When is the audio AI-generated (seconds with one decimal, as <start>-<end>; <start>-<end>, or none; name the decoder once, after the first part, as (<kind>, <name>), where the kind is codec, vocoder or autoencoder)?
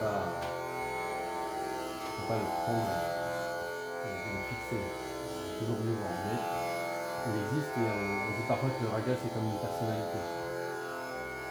1.1-2.0 (vocoder, BigVGAN v2); 10.5-11.1